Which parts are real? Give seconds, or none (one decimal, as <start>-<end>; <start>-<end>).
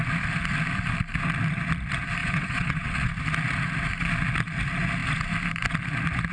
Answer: 0.0-2.2; 3.1-6.3